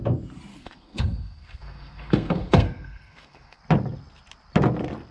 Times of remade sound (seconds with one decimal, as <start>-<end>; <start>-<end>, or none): 0.5-3.6